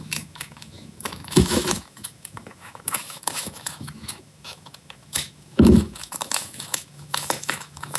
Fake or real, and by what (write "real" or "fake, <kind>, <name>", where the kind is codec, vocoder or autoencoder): fake, autoencoder, DAC-VAE